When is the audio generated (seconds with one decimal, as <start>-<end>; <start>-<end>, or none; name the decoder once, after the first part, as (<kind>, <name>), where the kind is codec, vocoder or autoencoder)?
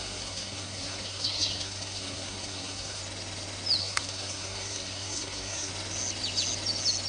0.0-3.0 (codec, SNAC); 3.8-5.7